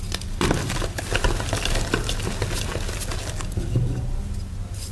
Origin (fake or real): real